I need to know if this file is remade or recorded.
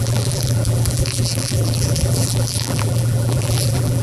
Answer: remade